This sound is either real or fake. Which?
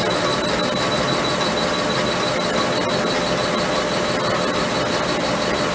real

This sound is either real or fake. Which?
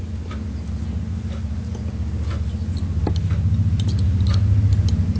real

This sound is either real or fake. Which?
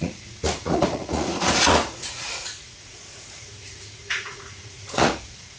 fake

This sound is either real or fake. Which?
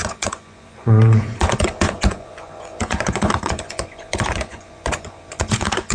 fake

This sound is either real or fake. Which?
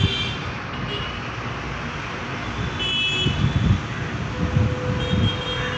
real